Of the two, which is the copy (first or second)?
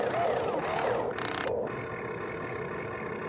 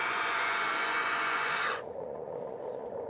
second